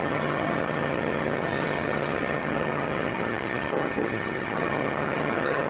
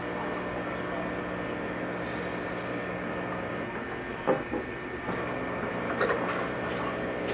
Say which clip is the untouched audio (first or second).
second